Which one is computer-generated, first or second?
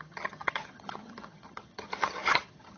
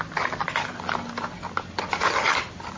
first